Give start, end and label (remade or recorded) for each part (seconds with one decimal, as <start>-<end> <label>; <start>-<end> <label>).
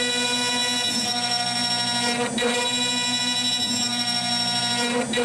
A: 0.0-5.2 recorded